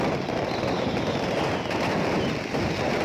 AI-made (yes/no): no